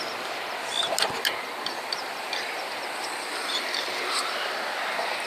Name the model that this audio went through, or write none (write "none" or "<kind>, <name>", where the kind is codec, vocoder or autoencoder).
none